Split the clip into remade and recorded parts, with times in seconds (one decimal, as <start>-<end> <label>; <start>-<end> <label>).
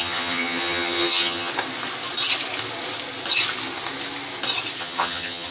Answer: 0.0-1.5 remade; 1.5-4.8 recorded; 4.8-5.5 remade